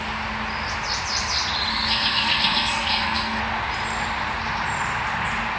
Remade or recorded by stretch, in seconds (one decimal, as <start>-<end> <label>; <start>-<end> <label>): 0.0-1.7 recorded; 1.7-3.4 remade; 3.4-5.6 recorded